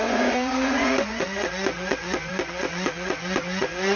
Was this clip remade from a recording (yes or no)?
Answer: yes